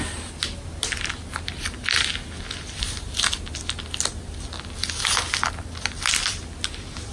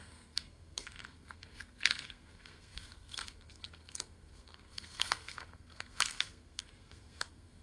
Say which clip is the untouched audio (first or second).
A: first